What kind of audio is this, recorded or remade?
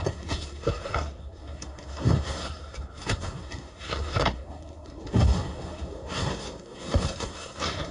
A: remade